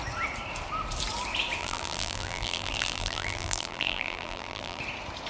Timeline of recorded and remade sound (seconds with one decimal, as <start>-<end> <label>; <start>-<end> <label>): 0.0-1.6 recorded; 1.6-4.8 remade; 4.8-5.3 recorded